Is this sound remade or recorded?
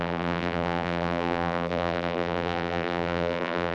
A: remade